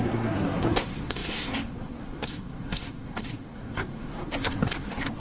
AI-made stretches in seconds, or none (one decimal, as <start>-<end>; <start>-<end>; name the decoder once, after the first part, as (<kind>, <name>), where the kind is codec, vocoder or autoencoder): 0.0-5.2 (codec, SNAC)